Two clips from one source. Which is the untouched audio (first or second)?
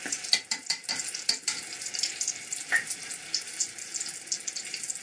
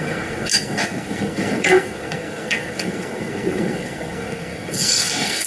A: first